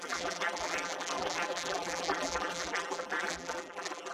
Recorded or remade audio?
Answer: remade